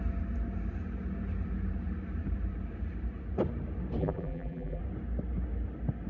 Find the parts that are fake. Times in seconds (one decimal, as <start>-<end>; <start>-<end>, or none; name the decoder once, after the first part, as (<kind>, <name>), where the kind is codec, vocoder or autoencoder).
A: 4.0-4.8 (vocoder, BigVGAN v2)